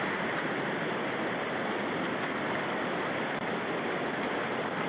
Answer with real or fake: real